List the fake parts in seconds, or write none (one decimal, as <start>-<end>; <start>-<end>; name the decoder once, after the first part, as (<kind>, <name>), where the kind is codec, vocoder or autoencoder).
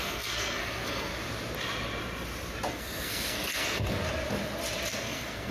0.0-1.1 (codec, SNAC); 2.7-4.0; 4.9-5.5